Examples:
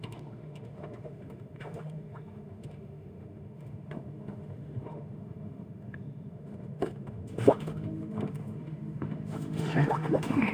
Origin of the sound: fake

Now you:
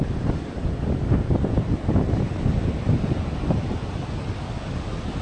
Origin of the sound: real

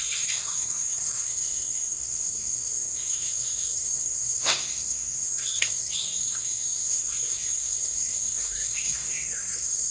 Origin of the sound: fake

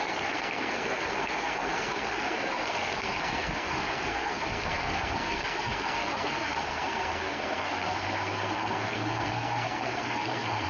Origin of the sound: fake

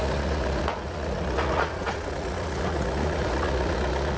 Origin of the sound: fake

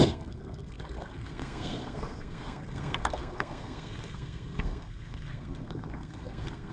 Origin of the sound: fake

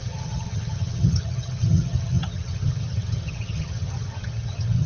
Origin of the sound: fake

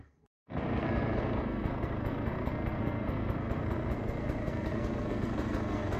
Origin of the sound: fake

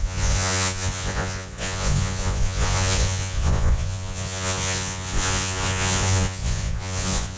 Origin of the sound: fake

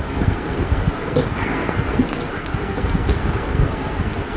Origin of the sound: fake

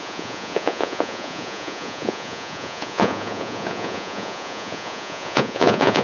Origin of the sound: fake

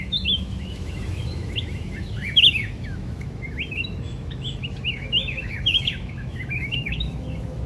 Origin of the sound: fake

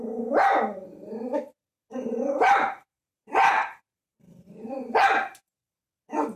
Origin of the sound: real